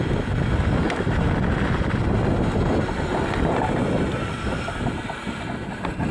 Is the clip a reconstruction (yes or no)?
no